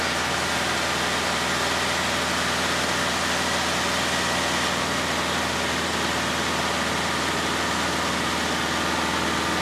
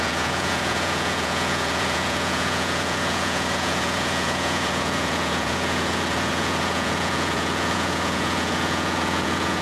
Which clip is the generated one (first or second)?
second